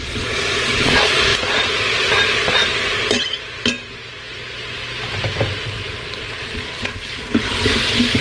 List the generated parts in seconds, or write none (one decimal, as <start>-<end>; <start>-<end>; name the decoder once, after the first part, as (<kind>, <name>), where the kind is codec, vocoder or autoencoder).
0.0-1.3 (vocoder, Vocos); 6.2-6.9